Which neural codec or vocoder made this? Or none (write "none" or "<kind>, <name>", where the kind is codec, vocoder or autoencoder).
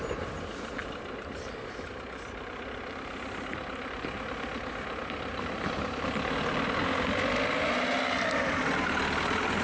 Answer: none